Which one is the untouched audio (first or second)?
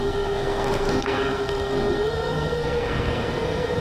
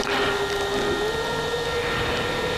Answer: second